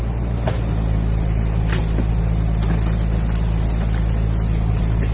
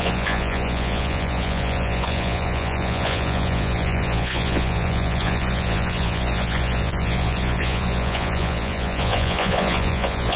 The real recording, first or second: first